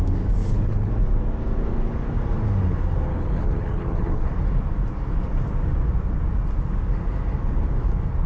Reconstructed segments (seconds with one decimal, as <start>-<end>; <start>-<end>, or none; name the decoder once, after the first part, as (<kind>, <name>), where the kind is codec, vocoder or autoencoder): 0.4-0.9 (codec, HILCodec); 3.1-4.3